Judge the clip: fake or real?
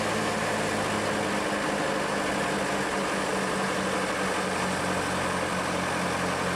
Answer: real